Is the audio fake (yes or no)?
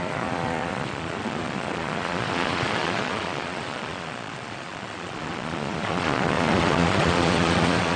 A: yes